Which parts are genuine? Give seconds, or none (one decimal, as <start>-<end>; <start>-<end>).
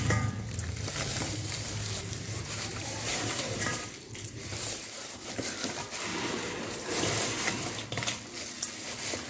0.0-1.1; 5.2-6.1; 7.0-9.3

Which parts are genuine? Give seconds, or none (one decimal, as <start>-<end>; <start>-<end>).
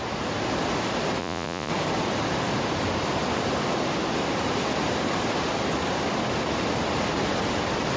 0.0-1.2; 1.7-8.0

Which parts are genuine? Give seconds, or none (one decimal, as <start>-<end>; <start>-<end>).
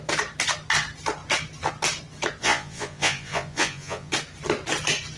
0.0-2.4; 4.1-5.2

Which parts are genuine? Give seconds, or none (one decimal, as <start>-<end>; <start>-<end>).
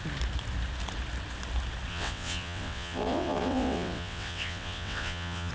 0.0-1.9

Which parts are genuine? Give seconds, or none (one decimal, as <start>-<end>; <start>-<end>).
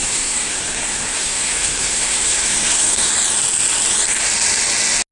3.1-5.1